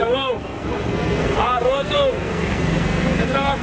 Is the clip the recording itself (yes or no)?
no